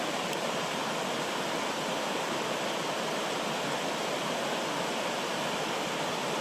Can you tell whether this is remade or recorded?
recorded